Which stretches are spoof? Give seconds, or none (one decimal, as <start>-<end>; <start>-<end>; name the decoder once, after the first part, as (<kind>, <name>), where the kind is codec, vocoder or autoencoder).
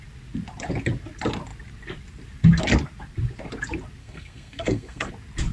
4.0-5.1 (codec, SNAC)